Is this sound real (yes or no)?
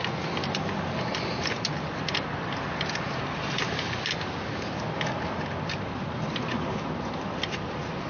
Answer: yes